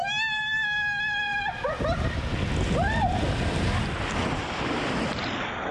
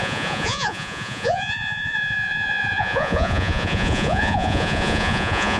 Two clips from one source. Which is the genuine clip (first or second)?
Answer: first